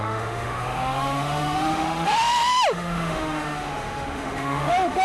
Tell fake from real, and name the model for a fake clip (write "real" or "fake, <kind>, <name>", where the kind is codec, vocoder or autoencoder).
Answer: fake, autoencoder, DAC-VAE